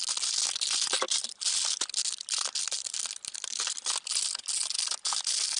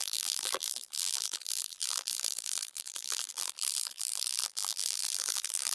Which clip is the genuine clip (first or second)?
first